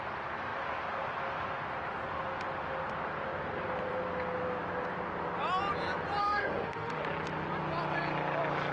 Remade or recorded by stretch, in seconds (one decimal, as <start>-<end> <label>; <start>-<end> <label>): 0.0-6.2 recorded; 6.2-7.0 remade; 7.0-8.7 recorded